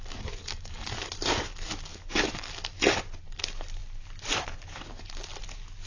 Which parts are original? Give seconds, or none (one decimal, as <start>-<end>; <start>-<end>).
0.0-0.4; 0.9-1.9; 2.5-5.9